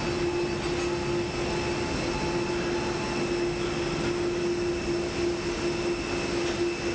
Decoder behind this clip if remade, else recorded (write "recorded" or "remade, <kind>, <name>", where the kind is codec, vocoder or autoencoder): recorded